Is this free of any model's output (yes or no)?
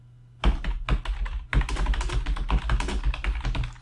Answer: yes